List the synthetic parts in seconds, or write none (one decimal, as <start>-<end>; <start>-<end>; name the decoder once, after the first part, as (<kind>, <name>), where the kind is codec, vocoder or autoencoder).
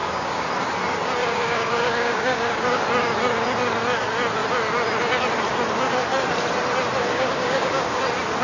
0.0-0.5 (codec, DAC); 1.2-2.8; 7.0-8.0